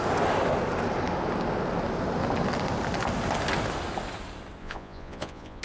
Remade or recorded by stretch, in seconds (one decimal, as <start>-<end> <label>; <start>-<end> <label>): 0.0-4.6 recorded; 4.6-5.6 remade